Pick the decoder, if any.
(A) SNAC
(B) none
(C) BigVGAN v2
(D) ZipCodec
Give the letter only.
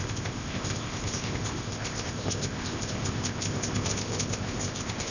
D